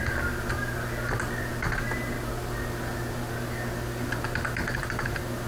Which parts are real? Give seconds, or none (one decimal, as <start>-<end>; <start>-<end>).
0.0-5.5